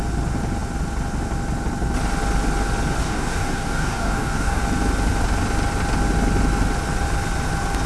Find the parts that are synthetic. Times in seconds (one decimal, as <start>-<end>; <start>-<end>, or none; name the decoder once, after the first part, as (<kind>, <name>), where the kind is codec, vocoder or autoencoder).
3.0-4.6 (codec, DAC)